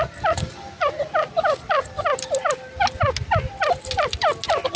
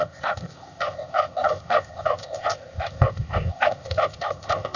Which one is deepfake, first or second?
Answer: second